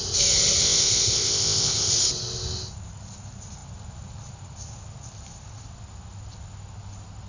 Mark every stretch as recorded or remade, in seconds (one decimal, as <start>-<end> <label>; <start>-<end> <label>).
0.0-0.6 recorded; 0.6-1.9 remade; 1.9-7.3 recorded